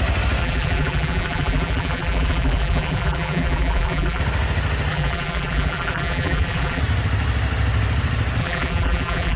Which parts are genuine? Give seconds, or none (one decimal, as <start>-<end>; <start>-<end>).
0.0-0.4; 4.2-4.9; 6.8-8.4